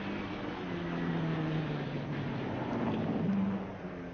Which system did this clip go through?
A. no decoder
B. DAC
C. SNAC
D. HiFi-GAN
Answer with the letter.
A